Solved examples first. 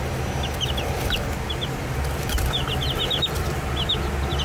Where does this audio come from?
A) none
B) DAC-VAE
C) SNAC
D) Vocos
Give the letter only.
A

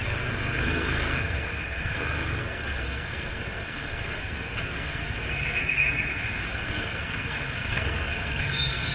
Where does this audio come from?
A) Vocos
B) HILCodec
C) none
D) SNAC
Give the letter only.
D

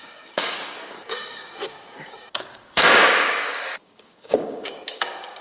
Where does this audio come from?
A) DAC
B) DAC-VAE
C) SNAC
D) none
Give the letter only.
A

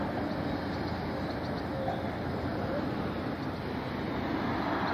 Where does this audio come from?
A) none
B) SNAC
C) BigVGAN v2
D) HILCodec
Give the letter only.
A